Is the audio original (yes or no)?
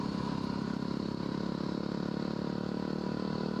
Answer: yes